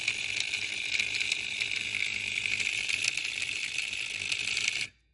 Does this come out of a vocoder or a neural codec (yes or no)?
no